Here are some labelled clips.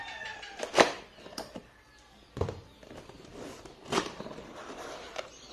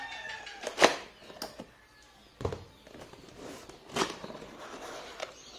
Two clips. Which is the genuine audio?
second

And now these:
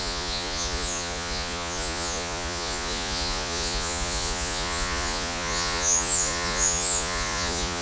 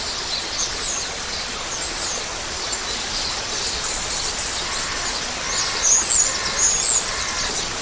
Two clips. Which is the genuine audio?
second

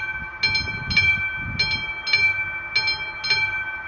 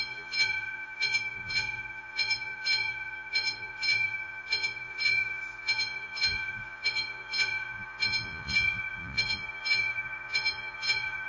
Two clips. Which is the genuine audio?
first